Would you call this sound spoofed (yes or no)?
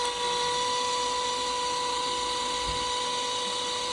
no